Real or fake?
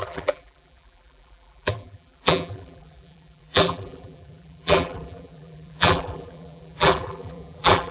fake